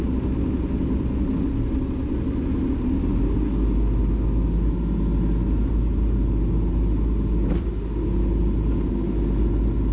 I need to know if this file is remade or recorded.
recorded